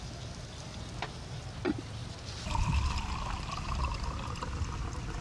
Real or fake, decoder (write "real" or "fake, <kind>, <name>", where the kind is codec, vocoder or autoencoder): real